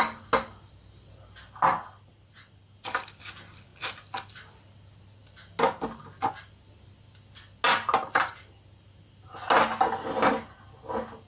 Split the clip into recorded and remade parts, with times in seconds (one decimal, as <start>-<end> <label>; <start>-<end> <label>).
0.0-11.3 recorded